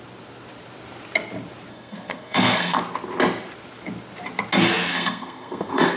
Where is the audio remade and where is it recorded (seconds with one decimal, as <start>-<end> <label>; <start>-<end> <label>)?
0.0-1.7 recorded; 1.7-2.8 remade; 2.8-4.9 recorded; 4.9-6.0 remade